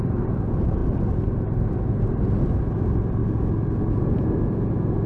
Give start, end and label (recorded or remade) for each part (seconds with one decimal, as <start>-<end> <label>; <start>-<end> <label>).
0.0-5.1 recorded

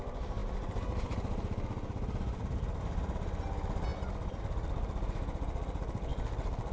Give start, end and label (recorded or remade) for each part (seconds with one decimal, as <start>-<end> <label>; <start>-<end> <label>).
0.0-6.7 recorded

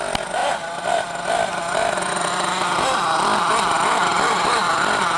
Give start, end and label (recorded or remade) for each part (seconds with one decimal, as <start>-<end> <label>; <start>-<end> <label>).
0.0-0.4 recorded; 0.4-3.5 remade; 3.5-4.1 recorded; 4.1-4.7 remade; 4.7-5.2 recorded

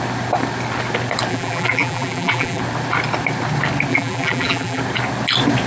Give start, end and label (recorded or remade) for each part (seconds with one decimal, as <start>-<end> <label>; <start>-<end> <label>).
0.0-1.3 recorded; 1.3-2.6 remade; 2.6-3.9 recorded; 3.9-4.8 remade; 4.8-5.7 recorded

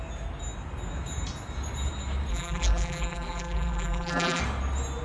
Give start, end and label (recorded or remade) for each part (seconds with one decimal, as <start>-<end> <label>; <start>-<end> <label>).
0.0-2.3 recorded; 2.3-4.4 remade; 4.4-5.0 recorded

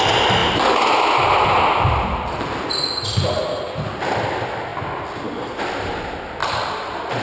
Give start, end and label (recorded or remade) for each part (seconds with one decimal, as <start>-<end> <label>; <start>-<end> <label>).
0.0-6.4 recorded; 6.4-7.2 remade

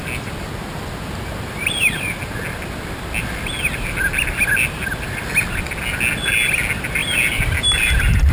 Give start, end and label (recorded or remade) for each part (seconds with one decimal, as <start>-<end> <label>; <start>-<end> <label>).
0.0-8.3 recorded

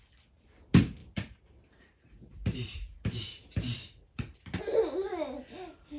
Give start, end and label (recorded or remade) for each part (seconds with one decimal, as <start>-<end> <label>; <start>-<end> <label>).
0.0-1.0 recorded; 1.0-4.6 remade; 4.6-6.0 recorded